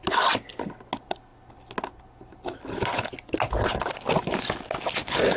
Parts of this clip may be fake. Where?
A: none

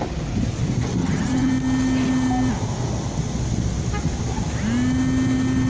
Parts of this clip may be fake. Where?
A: 1.0-1.5 (vocoder, HiFi-GAN)

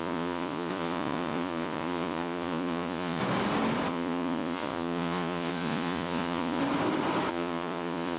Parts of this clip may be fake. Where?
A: 0.0-3.2 (vocoder, Vocos); 3.9-6.6; 7.3-8.2

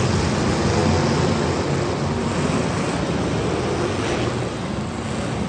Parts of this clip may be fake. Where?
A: none

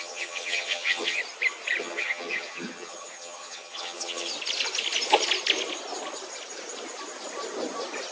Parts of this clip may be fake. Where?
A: 0.0-1.2 (vocoder, HiFi-GAN); 1.8-4.3

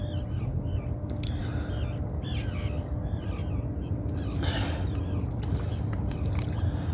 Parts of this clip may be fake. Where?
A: none

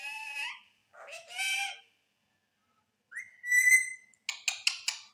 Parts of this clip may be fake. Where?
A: none

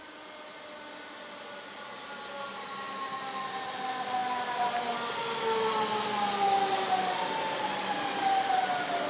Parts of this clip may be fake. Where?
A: none